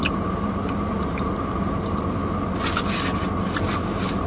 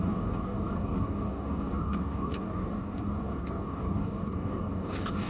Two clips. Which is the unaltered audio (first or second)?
first